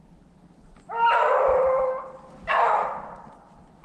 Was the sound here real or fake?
real